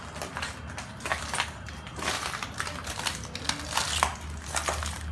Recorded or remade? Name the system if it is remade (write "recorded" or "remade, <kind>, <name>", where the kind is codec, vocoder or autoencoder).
recorded